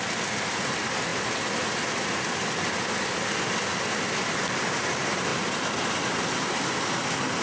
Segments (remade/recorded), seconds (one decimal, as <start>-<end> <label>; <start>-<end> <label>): 0.0-7.4 recorded